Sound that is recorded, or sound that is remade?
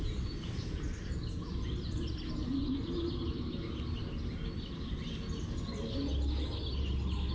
recorded